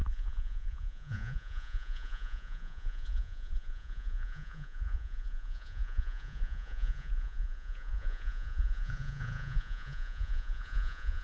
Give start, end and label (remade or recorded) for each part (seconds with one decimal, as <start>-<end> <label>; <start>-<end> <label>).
0.0-11.2 remade